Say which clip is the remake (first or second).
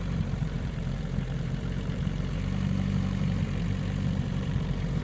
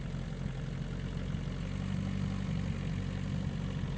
first